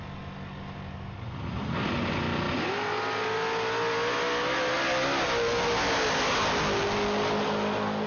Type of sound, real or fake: real